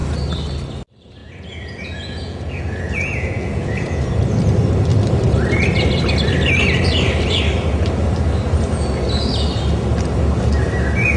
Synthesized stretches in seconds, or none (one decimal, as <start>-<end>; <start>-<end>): 1.2-4.0